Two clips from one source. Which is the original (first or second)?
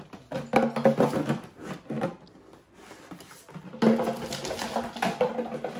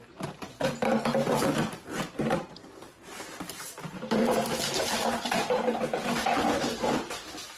first